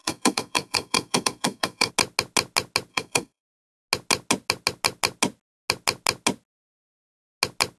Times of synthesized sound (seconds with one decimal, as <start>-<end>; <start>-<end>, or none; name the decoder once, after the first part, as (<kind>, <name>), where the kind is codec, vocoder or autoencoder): 0.0-1.9 (codec, SNAC); 2.9-3.4